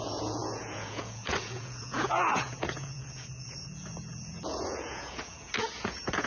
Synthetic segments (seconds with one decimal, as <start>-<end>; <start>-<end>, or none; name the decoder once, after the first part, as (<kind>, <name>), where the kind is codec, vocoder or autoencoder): 0.0-6.3 (vocoder, Vocos)